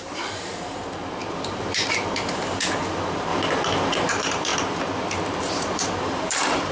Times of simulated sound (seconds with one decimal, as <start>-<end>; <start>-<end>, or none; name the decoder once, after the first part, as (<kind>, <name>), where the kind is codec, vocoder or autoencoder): 0.0-3.3 (vocoder, BigVGAN v2); 4.1-4.5; 5.4-6.7